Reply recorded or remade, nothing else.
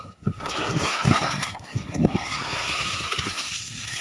remade